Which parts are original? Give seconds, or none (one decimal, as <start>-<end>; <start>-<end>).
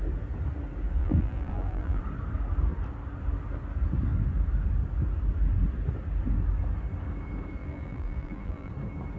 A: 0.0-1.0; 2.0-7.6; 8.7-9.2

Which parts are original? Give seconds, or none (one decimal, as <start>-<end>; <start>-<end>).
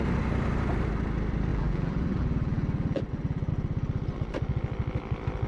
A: 0.0-1.5; 3.5-5.5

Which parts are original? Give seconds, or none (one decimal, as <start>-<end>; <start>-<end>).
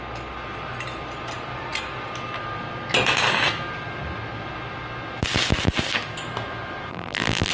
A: 0.0-6.9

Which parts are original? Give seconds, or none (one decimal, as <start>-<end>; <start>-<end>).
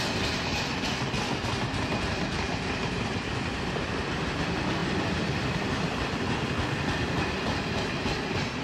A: 0.0-4.8; 5.4-8.6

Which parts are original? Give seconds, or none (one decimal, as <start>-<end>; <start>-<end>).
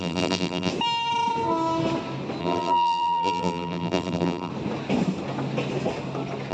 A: 0.7-2.4; 4.5-6.5